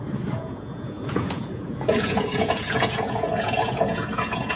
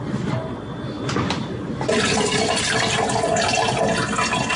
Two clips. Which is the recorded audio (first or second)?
second